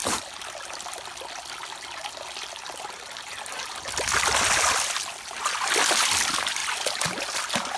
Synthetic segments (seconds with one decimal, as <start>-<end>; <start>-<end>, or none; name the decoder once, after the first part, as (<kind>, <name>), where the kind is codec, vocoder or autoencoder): none